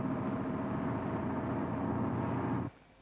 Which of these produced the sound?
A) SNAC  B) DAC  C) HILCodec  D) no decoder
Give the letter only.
D